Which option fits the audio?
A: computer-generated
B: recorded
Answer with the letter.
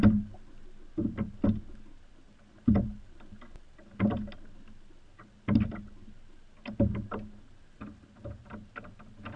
B